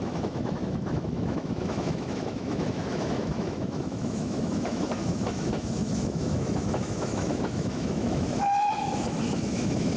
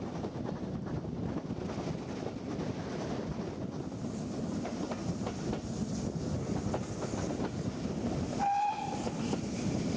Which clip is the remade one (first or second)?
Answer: first